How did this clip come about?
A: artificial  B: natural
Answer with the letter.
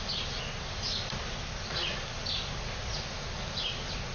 B